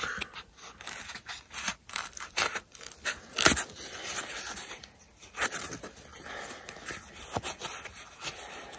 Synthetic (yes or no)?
no